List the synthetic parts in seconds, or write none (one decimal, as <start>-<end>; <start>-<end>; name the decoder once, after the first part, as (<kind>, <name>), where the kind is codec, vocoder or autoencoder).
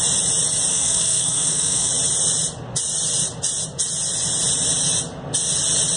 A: 0.7-1.9 (codec, SNAC)